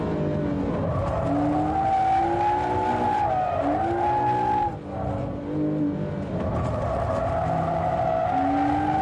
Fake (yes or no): no